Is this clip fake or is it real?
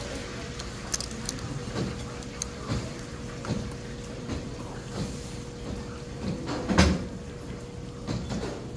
real